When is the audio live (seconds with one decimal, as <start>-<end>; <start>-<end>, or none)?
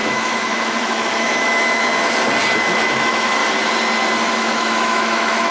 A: 1.9-2.8; 3.4-4.3